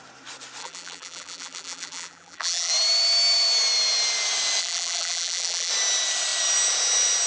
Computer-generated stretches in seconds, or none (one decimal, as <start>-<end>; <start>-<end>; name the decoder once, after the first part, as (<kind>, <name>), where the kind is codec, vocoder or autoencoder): 0.6-2.7 (vocoder, BigVGAN v2); 4.6-5.7